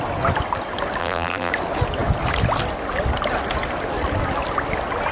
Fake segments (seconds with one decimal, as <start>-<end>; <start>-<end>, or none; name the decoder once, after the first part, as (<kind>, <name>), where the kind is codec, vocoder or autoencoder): 1.0-1.5 (vocoder, BigVGAN v2)

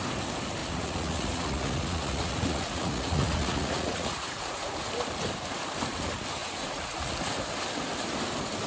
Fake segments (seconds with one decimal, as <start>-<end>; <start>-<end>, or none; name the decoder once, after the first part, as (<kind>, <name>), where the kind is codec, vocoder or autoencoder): 0.6-4.9 (vocoder, Vocos); 6.4-7.1

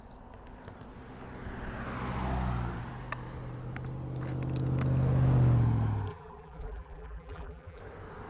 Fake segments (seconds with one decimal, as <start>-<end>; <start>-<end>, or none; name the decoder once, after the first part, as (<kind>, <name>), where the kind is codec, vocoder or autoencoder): 6.1-7.8 (vocoder, BigVGAN v2)

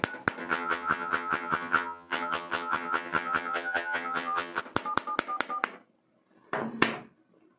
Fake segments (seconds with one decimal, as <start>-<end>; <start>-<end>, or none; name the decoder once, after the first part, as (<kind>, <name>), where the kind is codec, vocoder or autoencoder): 0.4-4.6 (vocoder, HiFi-GAN)